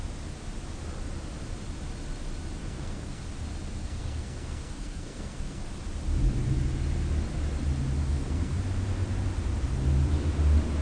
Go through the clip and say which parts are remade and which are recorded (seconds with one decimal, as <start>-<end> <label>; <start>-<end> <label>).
0.0-2.6 recorded; 2.6-3.2 remade; 3.2-3.8 recorded; 3.8-5.6 remade; 5.6-8.0 recorded; 8.0-8.6 remade; 8.6-10.8 recorded